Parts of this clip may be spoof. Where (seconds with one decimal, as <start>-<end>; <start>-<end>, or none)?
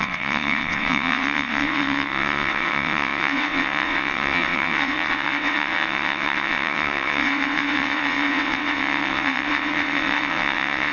0.0-10.9